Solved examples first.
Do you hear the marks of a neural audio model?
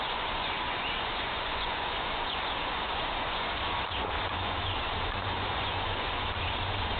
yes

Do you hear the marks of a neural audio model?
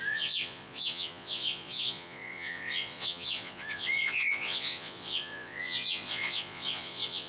yes